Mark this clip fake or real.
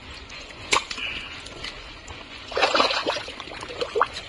fake